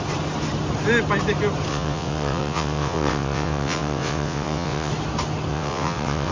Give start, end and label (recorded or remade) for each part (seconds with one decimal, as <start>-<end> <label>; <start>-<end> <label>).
0.0-1.7 recorded; 1.7-4.9 remade; 4.9-5.5 recorded; 5.5-6.3 remade